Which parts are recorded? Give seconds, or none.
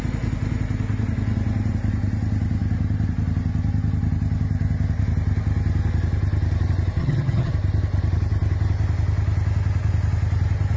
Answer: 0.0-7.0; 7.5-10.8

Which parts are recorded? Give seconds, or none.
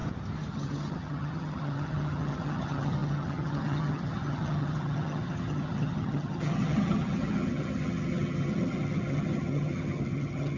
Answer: 0.0-0.5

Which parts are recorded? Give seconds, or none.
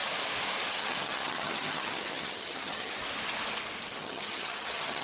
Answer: 0.0-0.7; 3.0-4.0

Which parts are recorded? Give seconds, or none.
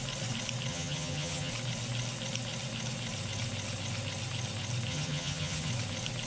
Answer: 0.0-0.7; 1.5-4.9; 5.7-6.3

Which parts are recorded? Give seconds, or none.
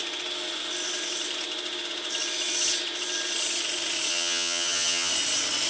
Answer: 0.0-4.1; 5.1-5.7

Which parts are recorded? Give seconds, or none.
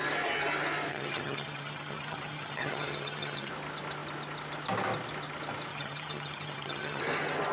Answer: 0.0-0.9; 3.5-5.7; 7.0-7.5